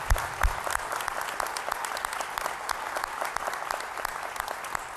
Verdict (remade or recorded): recorded